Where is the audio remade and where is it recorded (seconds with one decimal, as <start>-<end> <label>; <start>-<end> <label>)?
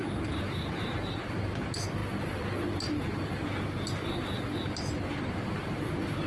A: 0.0-6.3 recorded